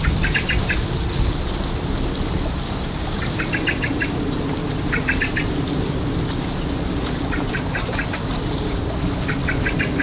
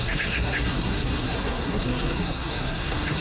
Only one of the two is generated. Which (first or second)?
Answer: second